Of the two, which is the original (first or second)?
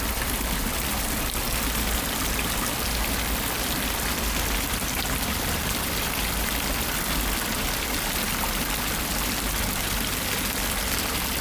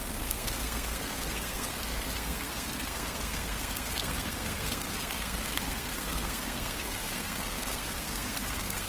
first